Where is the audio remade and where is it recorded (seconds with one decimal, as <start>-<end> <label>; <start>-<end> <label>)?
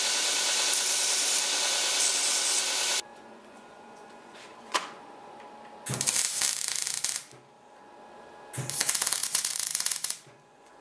0.0-3.1 recorded; 3.1-5.4 remade; 5.4-9.2 recorded; 9.2-10.8 remade